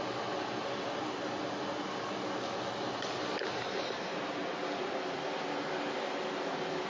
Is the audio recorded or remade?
recorded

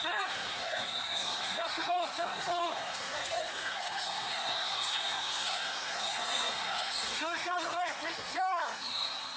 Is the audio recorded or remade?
remade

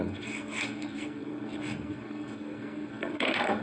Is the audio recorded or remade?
remade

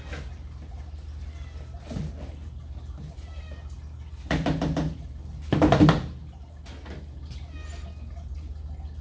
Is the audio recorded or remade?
recorded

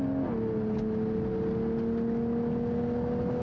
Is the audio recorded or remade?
recorded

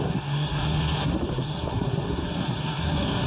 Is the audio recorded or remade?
remade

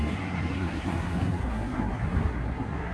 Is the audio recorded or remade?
remade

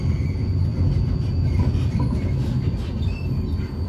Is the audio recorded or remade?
recorded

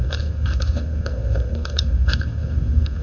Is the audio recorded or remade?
remade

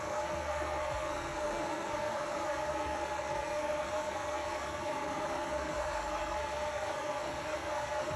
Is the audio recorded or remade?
remade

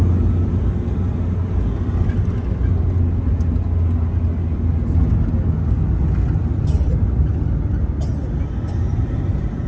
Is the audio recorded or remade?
recorded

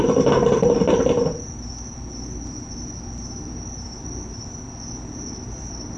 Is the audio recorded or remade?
recorded